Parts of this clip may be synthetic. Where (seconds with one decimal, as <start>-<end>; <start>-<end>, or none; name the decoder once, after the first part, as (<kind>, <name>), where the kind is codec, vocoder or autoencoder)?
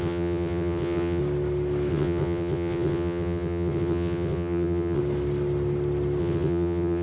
0.0-1.2 (vocoder, WaveNeXt); 1.9-5.0; 6.2-7.0